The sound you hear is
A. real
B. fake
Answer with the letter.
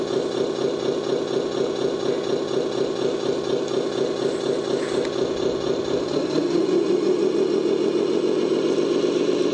A